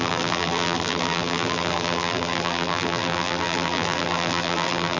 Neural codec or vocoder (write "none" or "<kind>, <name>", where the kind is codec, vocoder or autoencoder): vocoder, BigVGAN v2